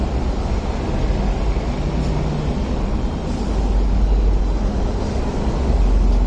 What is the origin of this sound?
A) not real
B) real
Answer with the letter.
B